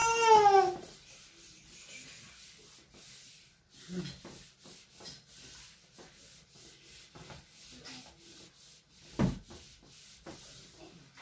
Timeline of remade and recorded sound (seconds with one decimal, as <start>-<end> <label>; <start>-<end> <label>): 0.0-11.2 recorded